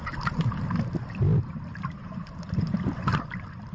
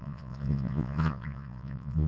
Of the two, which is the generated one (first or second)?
second